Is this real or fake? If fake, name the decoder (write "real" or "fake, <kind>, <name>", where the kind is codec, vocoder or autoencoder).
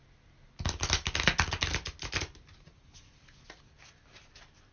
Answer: real